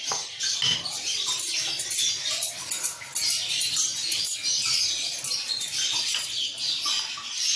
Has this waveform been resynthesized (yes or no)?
no